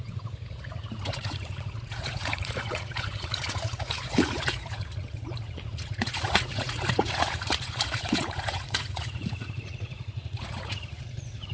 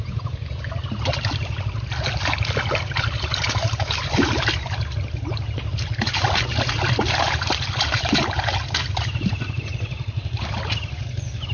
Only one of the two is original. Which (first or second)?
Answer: second